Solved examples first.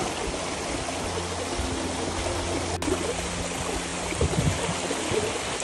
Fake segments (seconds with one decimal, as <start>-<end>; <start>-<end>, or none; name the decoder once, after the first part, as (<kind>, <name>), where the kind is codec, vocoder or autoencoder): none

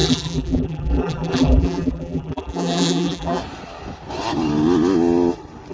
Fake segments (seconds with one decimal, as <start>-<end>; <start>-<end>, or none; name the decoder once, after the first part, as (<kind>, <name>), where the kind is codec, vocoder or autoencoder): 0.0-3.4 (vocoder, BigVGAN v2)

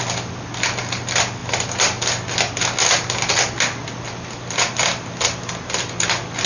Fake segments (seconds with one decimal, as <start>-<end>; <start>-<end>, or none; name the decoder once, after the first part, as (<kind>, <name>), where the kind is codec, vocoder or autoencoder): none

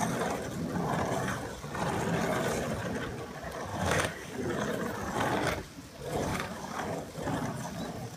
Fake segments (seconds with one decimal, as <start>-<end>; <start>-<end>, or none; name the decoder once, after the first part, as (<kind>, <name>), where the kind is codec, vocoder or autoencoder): 3.7-4.4 (codec, DAC); 6.3-7.1

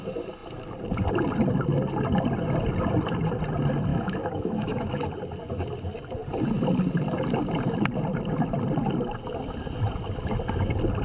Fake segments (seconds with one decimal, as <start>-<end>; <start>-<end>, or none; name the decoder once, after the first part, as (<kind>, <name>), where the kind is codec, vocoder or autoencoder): 3.9-5.0 (autoencoder, DAC-VAE)

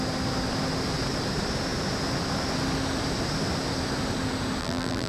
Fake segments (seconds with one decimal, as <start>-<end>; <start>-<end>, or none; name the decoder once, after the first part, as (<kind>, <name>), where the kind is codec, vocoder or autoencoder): 4.6-5.1 (vocoder, BigVGAN v2)